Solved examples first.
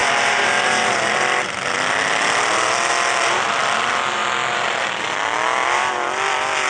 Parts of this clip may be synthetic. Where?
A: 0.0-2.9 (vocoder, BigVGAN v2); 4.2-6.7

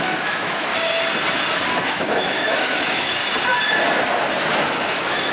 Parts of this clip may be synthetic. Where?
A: 0.0-0.7 (autoencoder, DAC-VAE); 1.8-3.2; 4.6-5.3

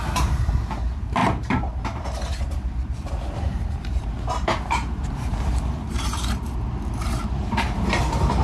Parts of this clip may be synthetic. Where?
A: 0.0-8.4 (vocoder, BigVGAN v2)

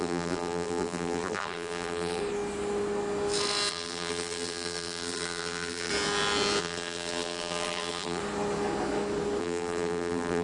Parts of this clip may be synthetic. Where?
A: 0.0-2.2 (vocoder, BigVGAN v2); 3.7-5.9; 6.6-8.2; 9.4-10.4

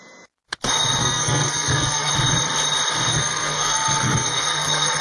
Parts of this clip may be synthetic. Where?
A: 1.0-2.1 (codec, SNAC); 3.1-5.0

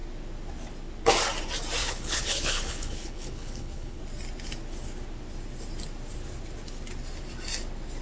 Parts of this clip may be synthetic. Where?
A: 1.8-4.0 (codec, HILCodec)

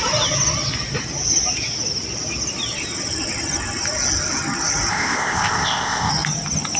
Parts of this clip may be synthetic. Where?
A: 4.9-6.1 (codec, ZipCodec)